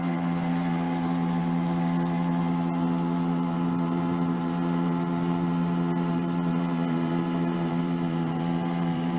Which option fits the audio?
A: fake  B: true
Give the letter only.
A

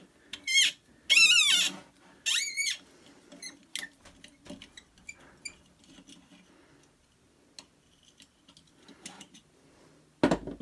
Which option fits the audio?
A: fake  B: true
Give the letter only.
B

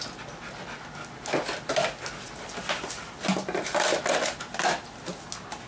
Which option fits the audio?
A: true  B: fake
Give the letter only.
A